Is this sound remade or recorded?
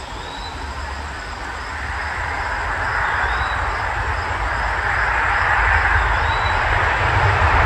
recorded